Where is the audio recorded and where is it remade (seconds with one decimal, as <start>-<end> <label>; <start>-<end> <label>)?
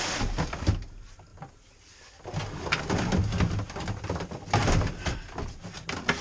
0.0-6.2 recorded